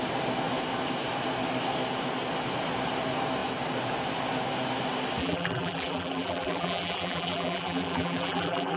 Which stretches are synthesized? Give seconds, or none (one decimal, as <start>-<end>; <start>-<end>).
5.2-8.8

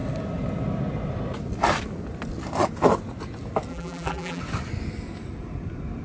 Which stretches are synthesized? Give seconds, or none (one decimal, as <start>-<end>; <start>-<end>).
3.7-4.4